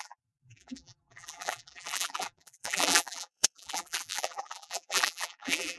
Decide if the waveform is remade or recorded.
remade